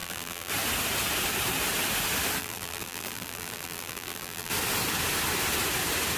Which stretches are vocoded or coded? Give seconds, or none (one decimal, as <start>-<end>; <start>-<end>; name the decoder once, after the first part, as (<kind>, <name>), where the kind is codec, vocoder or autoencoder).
0.0-0.5 (vocoder, BigVGAN v2); 2.4-4.5